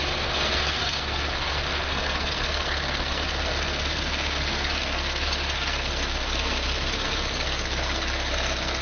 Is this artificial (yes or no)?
yes